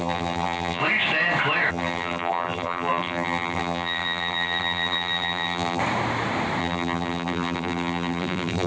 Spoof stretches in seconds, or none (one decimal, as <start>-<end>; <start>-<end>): 0.0-0.8; 1.7-5.8; 6.6-8.7